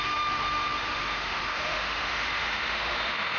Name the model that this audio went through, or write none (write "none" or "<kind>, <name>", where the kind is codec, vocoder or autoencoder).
autoencoder, DAC-VAE